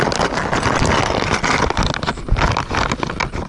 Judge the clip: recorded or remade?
recorded